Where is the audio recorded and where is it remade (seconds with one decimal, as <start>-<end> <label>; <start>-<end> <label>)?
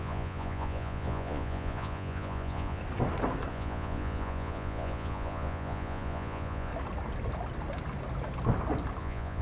0.0-2.8 remade; 2.8-3.5 recorded; 3.5-6.7 remade; 6.7-9.0 recorded; 9.0-9.4 remade